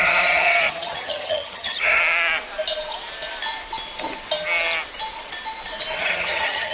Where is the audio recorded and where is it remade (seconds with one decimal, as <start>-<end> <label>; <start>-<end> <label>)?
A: 0.0-2.0 remade; 2.0-6.0 recorded; 6.0-6.7 remade